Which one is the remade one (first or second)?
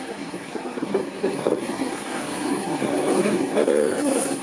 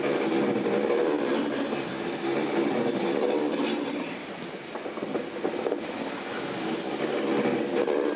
first